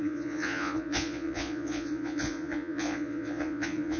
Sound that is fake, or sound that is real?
fake